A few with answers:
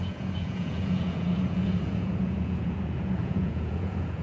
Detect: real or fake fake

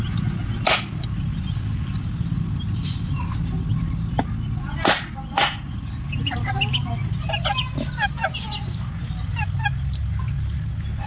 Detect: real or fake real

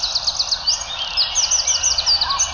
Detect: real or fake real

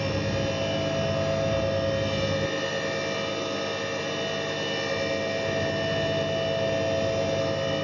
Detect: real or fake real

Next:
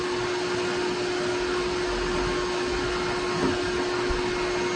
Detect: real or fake real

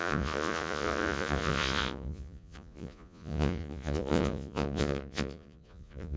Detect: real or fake fake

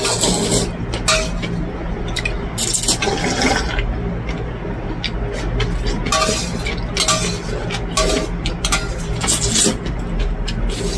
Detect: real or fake real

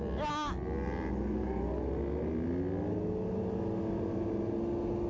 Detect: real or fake real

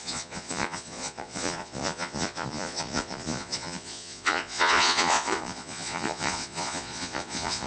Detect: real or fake fake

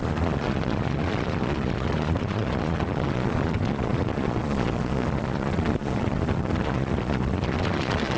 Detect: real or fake fake